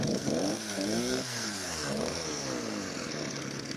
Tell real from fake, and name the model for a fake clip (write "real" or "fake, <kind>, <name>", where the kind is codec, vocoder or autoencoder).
fake, codec, SNAC